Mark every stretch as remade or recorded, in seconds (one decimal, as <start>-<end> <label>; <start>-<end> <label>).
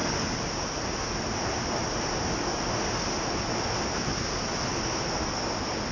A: 0.0-5.9 recorded